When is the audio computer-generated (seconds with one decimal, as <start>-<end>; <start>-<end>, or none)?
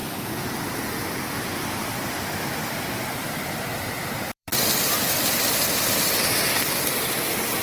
1.3-4.5; 5.7-7.6